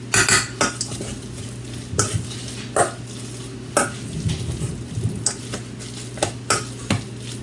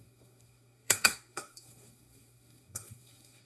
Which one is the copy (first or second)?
second